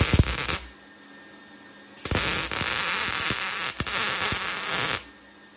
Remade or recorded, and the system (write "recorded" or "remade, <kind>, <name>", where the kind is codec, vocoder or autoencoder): recorded